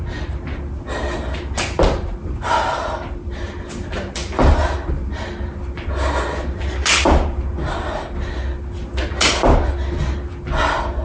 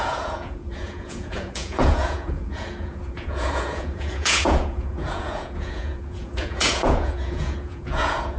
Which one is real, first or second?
first